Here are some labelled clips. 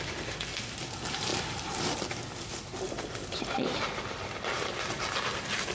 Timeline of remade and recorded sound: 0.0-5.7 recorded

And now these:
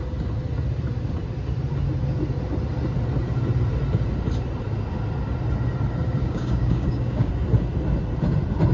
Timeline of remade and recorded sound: 0.0-6.2 recorded; 6.2-7.3 remade; 7.3-8.7 recorded

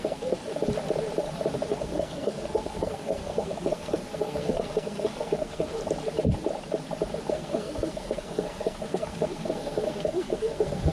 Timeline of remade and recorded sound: 0.0-0.5 remade; 0.5-1.7 recorded; 1.7-5.8 remade; 5.8-7.3 recorded; 7.3-10.9 remade

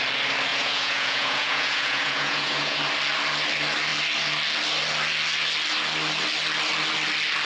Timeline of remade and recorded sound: 0.0-0.5 recorded; 0.5-2.8 remade; 2.8-7.4 recorded

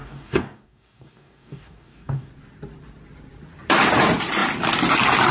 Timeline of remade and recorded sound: 0.0-2.3 remade; 2.3-5.3 recorded

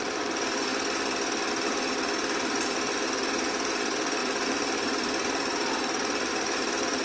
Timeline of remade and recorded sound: 0.0-0.7 remade; 0.7-1.5 recorded; 1.5-7.0 remade

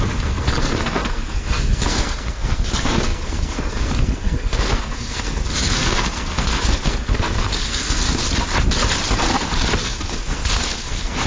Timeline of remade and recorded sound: 0.0-8.2 remade; 8.2-9.8 recorded; 9.8-11.3 remade

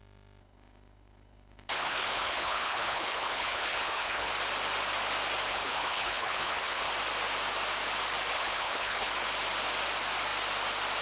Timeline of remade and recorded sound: 0.0-0.4 recorded; 0.4-4.3 remade; 4.3-5.5 recorded; 5.5-6.9 remade; 6.9-8.3 recorded; 8.3-9.1 remade; 9.1-11.0 recorded